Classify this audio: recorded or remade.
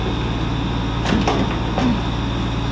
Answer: recorded